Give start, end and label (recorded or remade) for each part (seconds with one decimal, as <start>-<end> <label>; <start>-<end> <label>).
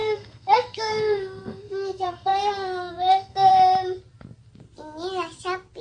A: 0.0-3.5 remade; 3.5-5.8 recorded